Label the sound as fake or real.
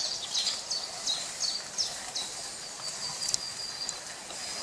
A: real